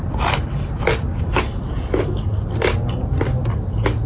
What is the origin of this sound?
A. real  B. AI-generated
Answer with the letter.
A